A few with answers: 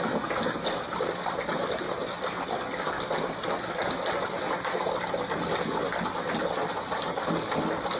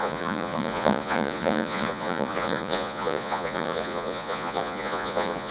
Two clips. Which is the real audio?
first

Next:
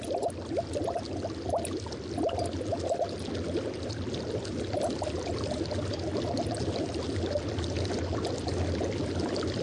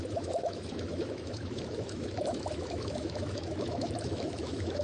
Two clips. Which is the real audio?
first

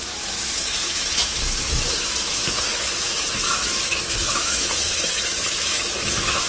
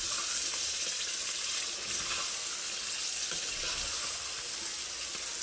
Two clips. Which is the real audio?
second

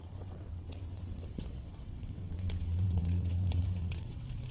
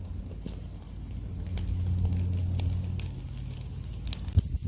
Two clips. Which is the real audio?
second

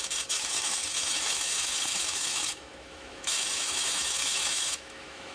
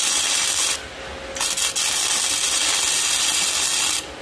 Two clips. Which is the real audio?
second